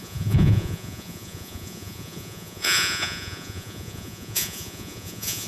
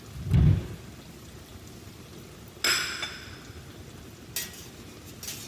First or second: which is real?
second